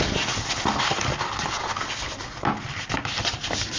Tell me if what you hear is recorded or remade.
recorded